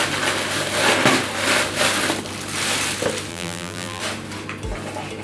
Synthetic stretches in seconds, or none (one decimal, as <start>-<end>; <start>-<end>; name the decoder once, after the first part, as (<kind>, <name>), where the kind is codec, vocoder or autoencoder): 3.3-4.0 (vocoder, BigVGAN v2)